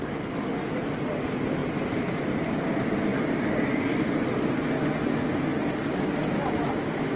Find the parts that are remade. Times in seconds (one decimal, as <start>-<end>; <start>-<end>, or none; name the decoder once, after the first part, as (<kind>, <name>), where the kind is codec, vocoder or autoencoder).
1.6-2.4 (vocoder, BigVGAN v2)